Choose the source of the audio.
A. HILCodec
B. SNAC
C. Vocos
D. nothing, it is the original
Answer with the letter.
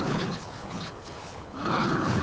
A